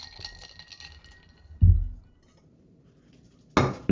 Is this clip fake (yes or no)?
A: no